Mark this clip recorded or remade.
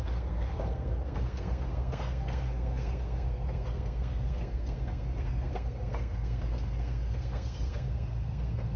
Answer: remade